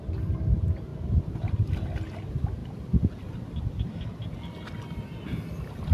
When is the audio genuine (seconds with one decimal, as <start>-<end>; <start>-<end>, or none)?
0.0-0.9; 1.5-5.9